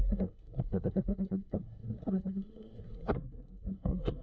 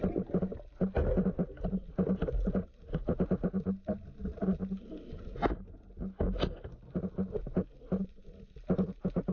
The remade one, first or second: first